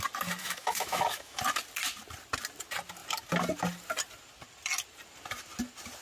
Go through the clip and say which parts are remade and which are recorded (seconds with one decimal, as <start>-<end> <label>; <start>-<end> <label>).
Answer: 0.0-0.4 recorded; 0.4-1.4 remade; 1.4-6.0 recorded